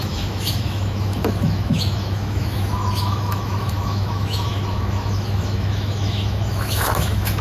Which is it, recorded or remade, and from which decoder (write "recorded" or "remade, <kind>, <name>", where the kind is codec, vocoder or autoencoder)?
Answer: remade, autoencoder, DAC-VAE